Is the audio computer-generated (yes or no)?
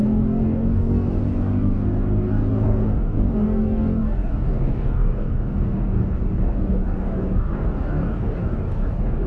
yes